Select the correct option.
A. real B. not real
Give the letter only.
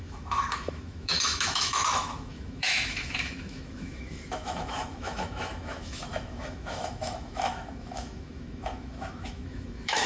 B